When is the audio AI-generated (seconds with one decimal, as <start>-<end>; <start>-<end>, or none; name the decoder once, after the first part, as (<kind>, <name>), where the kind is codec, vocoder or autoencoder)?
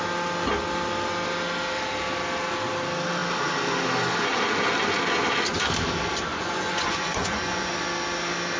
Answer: 6.3-7.7 (vocoder, Vocos)